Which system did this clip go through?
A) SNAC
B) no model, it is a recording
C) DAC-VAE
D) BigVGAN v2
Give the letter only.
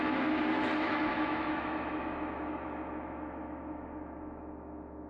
C